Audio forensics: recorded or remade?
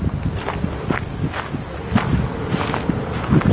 recorded